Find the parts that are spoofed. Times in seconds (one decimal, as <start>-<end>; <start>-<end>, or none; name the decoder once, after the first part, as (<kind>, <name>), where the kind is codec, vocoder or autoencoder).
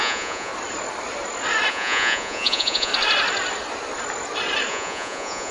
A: 0.0-0.5 (vocoder, Vocos); 1.7-2.9; 4.7-5.5